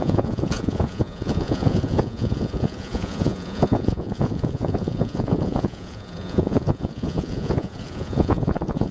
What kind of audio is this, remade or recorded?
remade